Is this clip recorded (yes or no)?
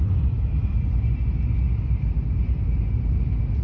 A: yes